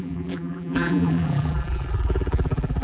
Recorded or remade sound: remade